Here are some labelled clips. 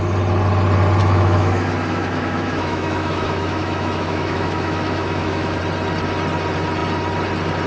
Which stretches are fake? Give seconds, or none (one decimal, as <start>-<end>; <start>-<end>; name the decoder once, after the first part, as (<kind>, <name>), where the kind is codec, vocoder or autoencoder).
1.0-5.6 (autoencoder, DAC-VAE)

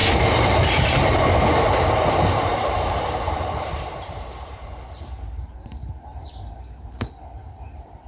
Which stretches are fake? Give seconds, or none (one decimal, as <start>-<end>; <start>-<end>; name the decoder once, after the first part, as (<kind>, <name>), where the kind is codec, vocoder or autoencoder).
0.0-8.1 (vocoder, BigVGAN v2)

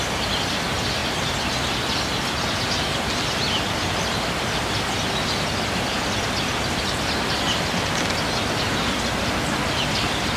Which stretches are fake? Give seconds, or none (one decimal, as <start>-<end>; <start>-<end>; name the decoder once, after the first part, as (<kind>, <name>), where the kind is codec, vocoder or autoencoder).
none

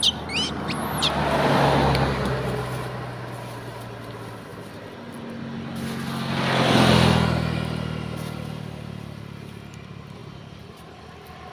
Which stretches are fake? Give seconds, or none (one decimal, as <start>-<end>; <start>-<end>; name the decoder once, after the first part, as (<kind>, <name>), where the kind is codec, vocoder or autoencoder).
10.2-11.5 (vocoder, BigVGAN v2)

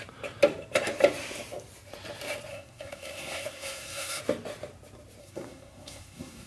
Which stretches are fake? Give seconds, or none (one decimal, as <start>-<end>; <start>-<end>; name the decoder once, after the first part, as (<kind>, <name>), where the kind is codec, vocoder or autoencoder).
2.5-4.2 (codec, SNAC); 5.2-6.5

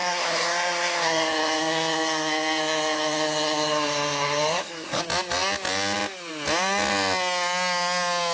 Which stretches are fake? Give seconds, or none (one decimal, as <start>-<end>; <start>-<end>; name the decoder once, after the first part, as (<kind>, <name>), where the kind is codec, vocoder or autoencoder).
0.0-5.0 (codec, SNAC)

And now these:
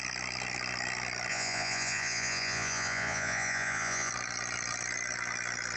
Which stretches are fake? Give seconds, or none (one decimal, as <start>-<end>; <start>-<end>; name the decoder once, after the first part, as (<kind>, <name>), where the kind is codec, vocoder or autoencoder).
1.3-4.1 (vocoder, Vocos)